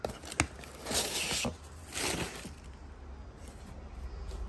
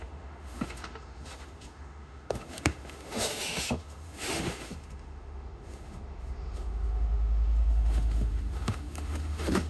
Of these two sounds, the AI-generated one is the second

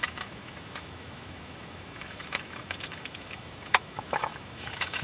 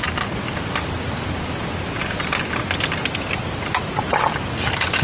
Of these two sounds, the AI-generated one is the first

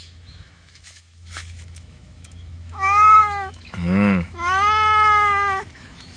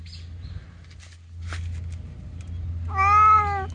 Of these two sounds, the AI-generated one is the first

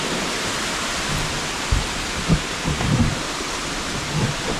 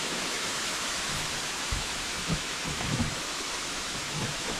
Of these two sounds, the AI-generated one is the second